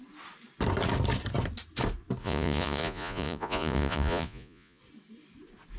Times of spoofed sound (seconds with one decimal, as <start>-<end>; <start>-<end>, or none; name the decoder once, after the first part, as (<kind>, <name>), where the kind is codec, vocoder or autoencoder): 2.2-4.8 (vocoder, Vocos)